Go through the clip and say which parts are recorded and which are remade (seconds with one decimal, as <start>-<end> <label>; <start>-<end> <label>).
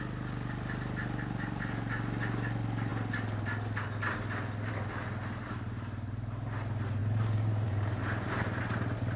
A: 0.0-7.0 recorded; 7.0-8.6 remade; 8.6-9.2 recorded